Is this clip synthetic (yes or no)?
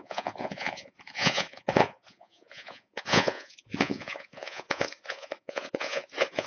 yes